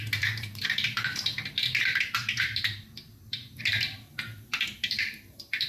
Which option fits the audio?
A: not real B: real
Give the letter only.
A